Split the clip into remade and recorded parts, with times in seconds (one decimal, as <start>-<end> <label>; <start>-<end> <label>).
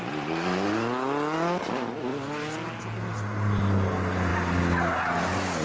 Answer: 0.0-5.6 recorded